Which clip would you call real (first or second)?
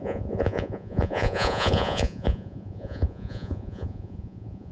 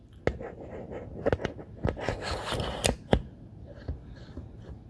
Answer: second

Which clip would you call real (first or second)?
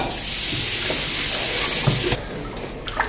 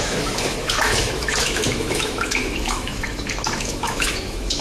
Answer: first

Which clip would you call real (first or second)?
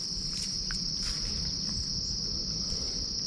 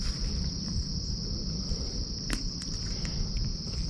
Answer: first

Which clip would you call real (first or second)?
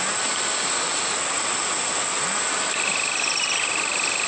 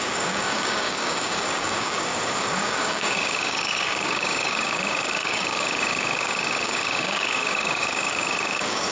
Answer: first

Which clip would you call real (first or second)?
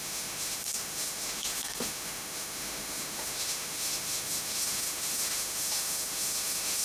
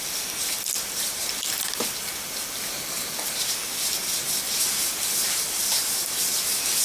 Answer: second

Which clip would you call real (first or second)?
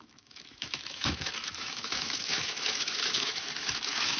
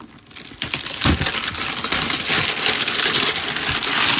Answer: second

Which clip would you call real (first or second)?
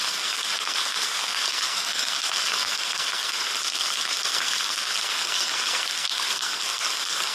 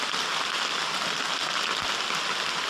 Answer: second